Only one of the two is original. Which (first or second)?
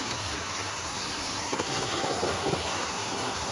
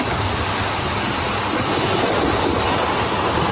second